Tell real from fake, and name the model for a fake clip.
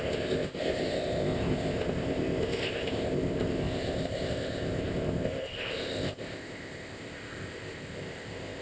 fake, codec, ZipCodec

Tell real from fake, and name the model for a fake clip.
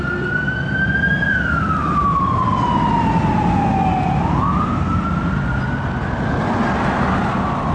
real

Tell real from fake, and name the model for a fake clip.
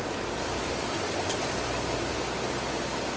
real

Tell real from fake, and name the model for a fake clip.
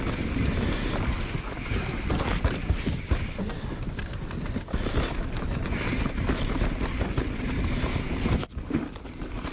real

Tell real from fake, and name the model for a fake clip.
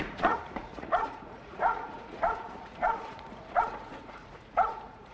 fake, vocoder, Vocos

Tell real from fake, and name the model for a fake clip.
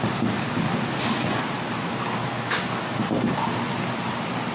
real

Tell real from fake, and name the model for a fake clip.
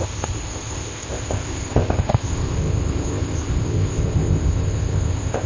fake, codec, ZipCodec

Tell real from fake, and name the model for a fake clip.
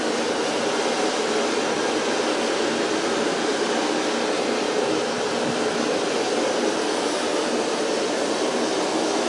real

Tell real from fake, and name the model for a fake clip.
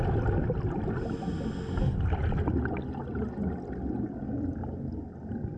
real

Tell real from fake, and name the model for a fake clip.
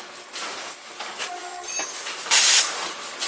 real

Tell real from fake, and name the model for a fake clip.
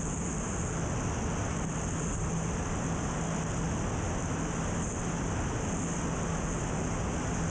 real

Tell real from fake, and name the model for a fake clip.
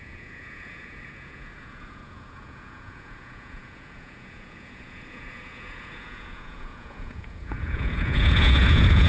fake, vocoder, Vocos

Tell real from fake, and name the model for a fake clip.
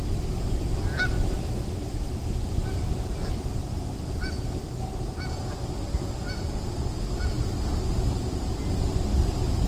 real